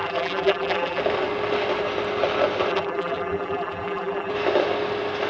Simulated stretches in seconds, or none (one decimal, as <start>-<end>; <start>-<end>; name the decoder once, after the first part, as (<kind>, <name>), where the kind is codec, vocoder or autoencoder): 0.0-1.0 (vocoder, BigVGAN v2); 2.7-4.3